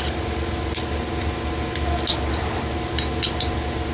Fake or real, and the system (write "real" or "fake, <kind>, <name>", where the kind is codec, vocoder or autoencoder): real